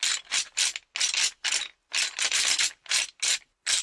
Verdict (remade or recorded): recorded